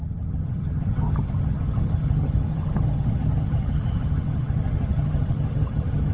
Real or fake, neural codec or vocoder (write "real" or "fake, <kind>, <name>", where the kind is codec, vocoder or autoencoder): fake, vocoder, HiFi-GAN